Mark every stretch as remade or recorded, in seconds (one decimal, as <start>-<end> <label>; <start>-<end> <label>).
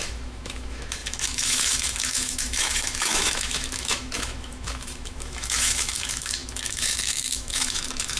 0.0-8.2 remade